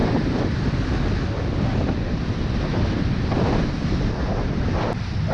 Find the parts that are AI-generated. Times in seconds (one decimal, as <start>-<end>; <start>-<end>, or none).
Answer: 2.7-3.4